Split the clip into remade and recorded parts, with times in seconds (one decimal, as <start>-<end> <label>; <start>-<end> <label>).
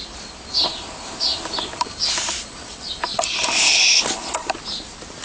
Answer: 0.0-5.2 recorded